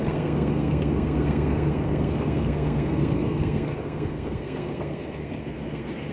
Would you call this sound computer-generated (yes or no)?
yes